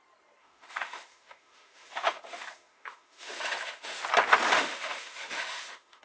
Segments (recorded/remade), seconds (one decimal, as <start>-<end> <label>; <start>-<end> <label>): 0.0-0.4 recorded; 0.4-4.0 remade; 4.0-4.4 recorded; 4.4-6.0 remade